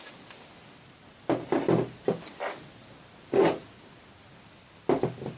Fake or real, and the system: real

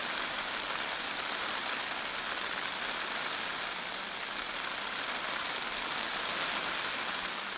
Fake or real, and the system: real